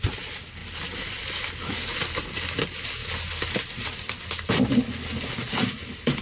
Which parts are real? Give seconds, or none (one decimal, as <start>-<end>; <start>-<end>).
0.0-0.6; 2.3-6.2